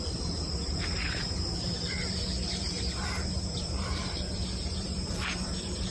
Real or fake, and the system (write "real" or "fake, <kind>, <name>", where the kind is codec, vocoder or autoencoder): fake, vocoder, BigVGAN v2